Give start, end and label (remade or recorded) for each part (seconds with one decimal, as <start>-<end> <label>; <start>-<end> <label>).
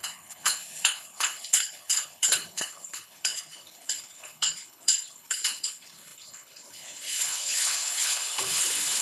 0.0-9.0 remade